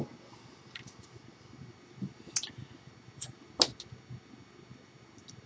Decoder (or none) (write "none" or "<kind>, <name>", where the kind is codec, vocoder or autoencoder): none